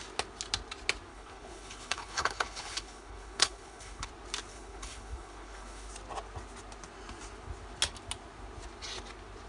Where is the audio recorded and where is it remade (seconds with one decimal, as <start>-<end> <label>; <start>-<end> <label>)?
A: 0.0-1.1 recorded; 1.1-4.1 remade; 4.1-4.5 recorded; 4.5-5.9 remade; 5.9-9.5 recorded